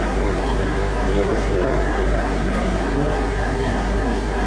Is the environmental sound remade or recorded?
remade